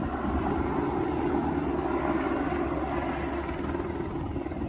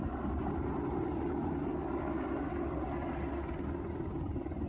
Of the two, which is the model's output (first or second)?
second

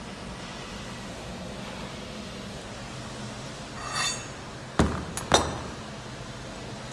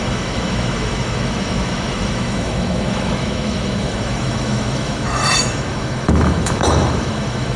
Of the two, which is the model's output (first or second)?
second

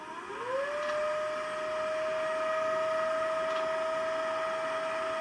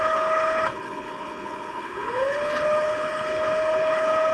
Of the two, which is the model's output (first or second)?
second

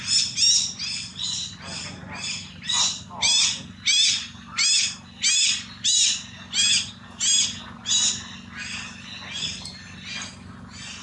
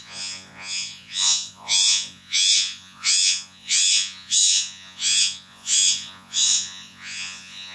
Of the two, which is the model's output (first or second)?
second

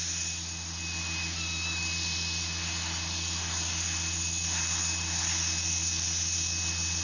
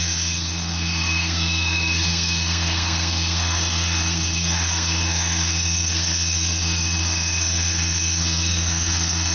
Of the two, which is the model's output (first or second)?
second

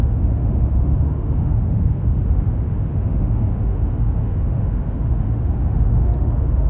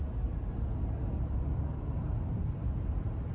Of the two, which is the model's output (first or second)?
first